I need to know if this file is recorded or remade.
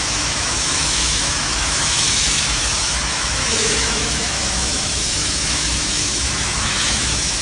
remade